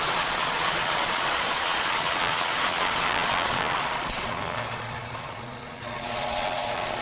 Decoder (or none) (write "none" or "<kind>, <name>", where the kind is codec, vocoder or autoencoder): vocoder, Vocos